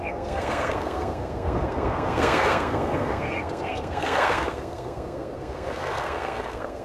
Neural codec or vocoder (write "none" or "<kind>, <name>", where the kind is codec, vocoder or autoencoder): codec, SNAC